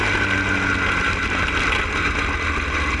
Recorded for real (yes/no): yes